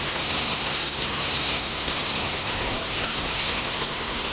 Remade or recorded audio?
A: remade